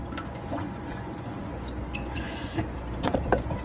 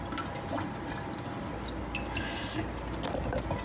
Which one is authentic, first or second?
second